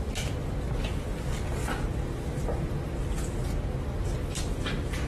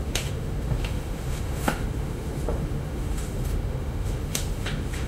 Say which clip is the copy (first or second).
second